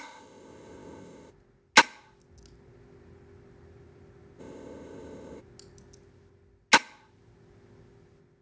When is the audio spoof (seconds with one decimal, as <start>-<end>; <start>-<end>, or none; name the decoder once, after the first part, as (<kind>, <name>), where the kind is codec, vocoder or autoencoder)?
0.0-1.3 (codec, ZipCodec); 4.4-5.4